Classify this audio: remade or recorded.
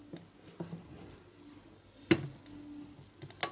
recorded